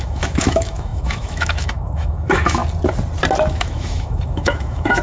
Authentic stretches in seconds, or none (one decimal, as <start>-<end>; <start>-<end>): 2.6-3.5